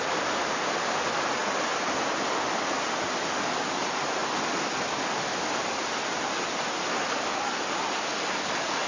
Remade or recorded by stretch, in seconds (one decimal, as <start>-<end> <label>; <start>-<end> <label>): 0.0-8.9 recorded